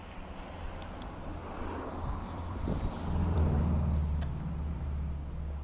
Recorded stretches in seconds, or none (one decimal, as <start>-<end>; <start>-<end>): 0.0-1.4; 3.6-5.6